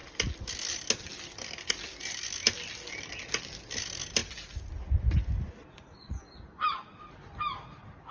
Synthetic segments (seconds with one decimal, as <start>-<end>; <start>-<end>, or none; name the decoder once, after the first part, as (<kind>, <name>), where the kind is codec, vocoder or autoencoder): 5.6-6.2 (vocoder, Vocos)